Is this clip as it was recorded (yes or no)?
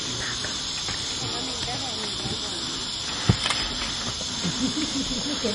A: yes